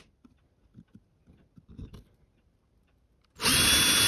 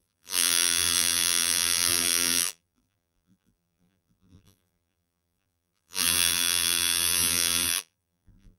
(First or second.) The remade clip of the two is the second